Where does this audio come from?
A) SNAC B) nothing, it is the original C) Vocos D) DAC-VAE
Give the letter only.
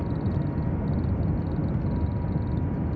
B